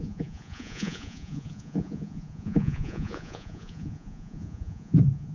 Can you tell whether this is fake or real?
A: fake